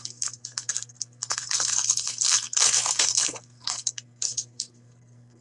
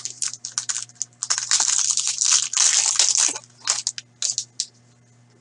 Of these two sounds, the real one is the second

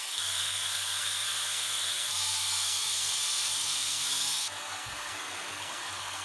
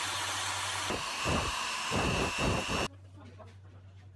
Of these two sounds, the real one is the second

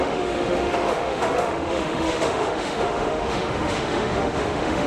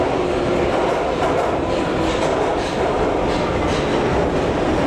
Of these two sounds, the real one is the second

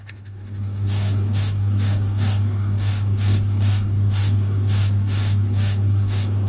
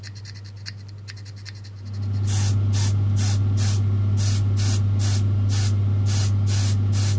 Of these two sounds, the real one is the second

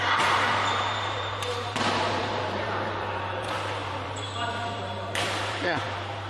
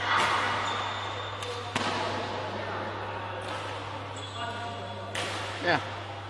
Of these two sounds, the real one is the second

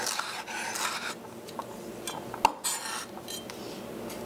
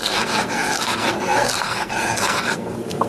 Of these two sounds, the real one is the first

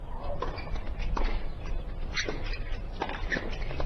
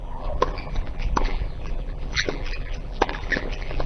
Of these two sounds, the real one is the first